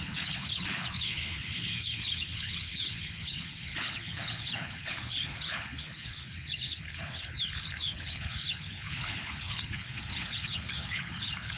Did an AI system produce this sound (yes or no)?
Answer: yes